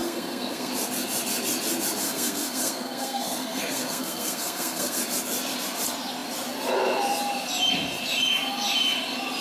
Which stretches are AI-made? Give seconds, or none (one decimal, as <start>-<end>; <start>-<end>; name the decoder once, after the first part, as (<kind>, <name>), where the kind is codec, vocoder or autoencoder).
0.0-0.7 (codec, SNAC); 2.0-5.0